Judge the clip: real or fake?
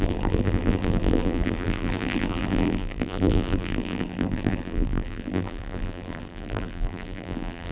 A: fake